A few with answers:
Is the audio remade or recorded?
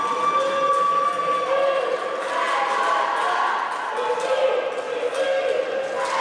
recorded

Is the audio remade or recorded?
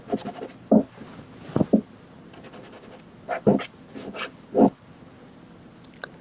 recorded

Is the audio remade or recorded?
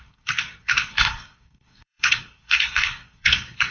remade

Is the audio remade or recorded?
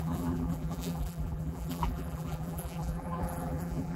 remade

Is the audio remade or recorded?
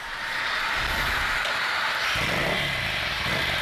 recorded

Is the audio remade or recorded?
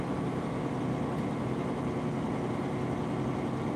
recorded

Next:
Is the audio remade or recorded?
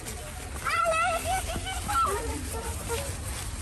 recorded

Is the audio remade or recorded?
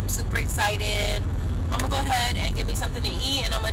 remade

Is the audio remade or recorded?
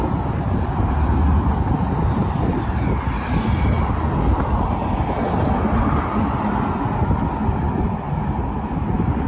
recorded